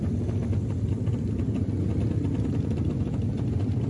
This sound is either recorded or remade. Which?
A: recorded